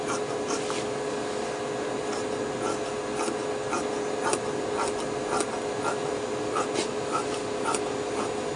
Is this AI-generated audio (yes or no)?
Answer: no